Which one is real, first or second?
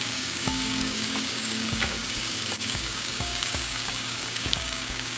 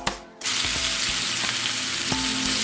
second